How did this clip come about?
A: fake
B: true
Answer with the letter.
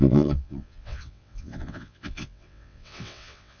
A